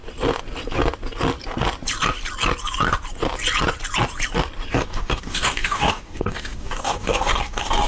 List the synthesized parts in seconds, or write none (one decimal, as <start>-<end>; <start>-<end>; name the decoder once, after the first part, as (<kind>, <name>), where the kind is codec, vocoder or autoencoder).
4.7-7.9 (codec, DAC)

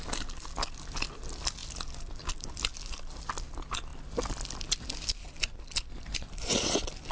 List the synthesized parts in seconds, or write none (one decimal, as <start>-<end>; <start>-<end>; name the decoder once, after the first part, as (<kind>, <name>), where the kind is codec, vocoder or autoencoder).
none